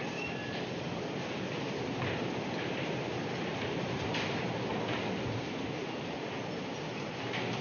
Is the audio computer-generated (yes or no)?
yes